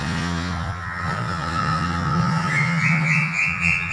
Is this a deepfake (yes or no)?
yes